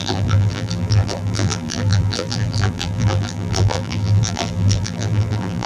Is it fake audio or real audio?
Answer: fake